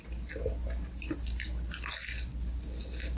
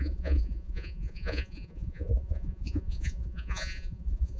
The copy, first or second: second